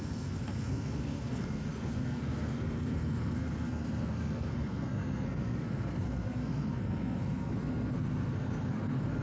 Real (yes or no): no